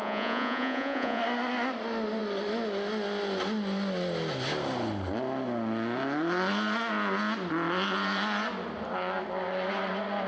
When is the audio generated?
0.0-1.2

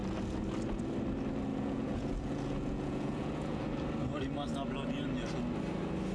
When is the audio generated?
1.5-3.6

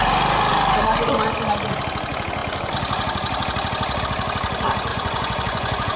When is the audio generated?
4.9-6.0